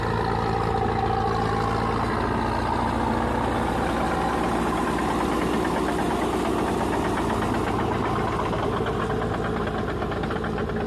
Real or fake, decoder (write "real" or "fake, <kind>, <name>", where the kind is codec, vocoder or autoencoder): real